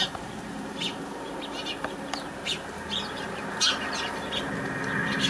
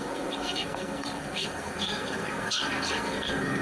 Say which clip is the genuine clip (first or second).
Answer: first